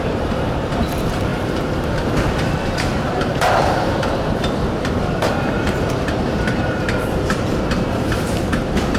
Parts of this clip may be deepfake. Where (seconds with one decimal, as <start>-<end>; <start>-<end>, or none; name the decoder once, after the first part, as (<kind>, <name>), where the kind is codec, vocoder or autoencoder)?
0.0-9.0 (vocoder, BigVGAN v2)